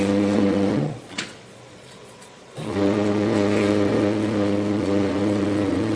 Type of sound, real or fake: fake